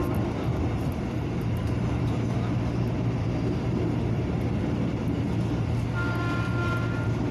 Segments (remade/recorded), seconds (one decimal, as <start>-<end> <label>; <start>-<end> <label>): 0.0-1.6 recorded; 1.6-3.6 remade; 3.6-7.3 recorded